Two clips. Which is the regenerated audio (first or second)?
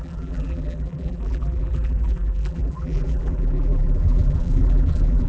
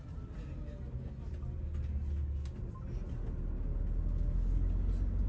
first